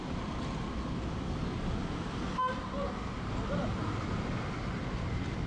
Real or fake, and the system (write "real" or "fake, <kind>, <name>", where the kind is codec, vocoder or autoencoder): real